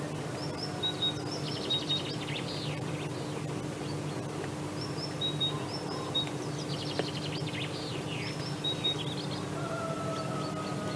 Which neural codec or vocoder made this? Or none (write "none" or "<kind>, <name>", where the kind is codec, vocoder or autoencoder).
none